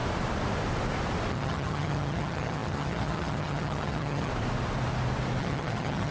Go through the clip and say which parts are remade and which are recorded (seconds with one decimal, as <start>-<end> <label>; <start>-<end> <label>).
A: 0.0-1.3 recorded; 1.3-4.3 remade; 4.3-5.4 recorded; 5.4-6.1 remade